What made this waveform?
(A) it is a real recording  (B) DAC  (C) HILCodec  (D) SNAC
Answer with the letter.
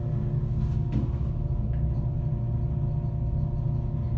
A